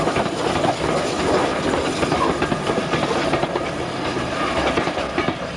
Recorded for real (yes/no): yes